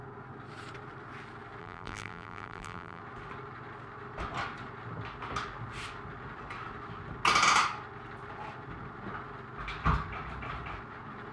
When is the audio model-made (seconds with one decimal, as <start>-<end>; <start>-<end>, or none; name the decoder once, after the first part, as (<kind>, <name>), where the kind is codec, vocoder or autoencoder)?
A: 1.6-3.0 (vocoder, BigVGAN v2)